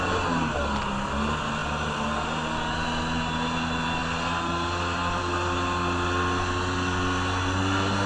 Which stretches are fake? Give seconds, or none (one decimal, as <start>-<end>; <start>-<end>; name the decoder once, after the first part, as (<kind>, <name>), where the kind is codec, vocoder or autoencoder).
none